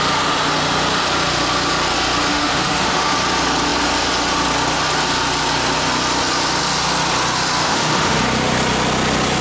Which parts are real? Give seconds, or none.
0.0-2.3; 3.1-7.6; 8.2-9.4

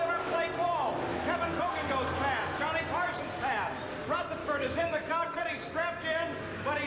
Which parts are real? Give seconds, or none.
0.0-1.1; 1.6-4.4; 5.4-6.9

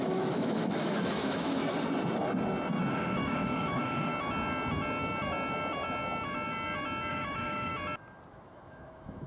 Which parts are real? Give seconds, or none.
1.6-2.9; 4.1-7.1; 7.7-8.3

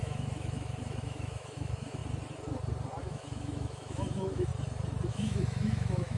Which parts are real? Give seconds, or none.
2.0-3.0; 4.5-5.1

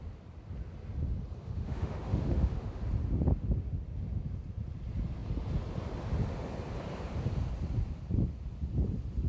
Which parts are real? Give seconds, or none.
0.0-1.4; 2.8-9.3

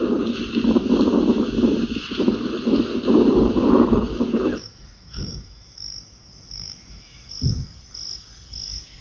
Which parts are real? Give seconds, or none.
0.0-4.5; 7.3-9.0

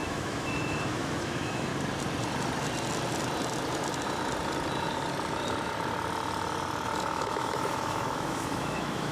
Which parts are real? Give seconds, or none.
1.7-7.0